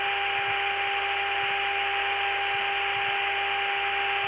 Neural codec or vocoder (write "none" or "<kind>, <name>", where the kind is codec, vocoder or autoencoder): none